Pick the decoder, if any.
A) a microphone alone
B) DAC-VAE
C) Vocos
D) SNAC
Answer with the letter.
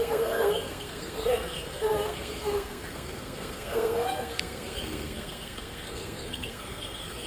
D